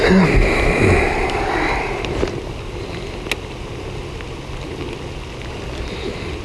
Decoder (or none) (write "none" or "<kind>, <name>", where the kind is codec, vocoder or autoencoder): none